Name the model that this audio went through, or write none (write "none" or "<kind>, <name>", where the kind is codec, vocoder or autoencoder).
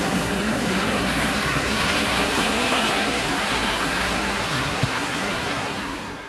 codec, SNAC